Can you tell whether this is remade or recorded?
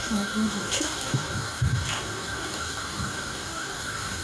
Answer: remade